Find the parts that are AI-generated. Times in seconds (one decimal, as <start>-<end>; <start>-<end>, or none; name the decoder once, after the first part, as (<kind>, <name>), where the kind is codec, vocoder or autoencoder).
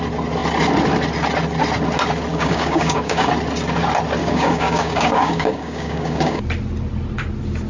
2.3-3.3 (codec, DAC); 4.2-6.4